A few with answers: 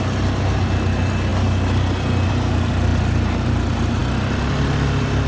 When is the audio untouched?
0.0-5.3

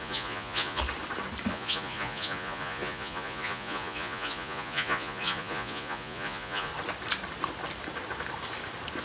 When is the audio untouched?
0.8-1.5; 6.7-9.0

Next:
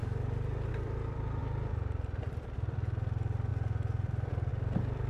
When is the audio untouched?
none

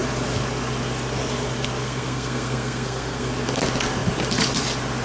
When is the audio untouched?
0.0-1.8; 3.3-5.0